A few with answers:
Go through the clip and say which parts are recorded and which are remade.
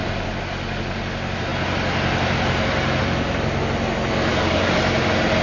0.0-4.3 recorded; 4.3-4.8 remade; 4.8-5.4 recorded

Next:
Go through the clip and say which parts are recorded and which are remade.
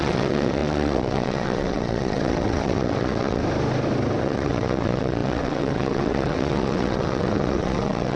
0.0-3.4 remade; 3.4-4.2 recorded; 4.2-8.2 remade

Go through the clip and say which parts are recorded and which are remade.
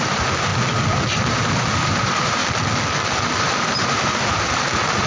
0.0-0.5 remade; 0.5-1.3 recorded; 1.3-2.4 remade; 2.4-3.4 recorded; 3.4-5.1 remade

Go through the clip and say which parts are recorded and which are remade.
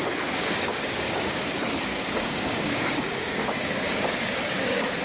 0.0-1.4 remade; 1.4-1.9 recorded; 1.9-5.0 remade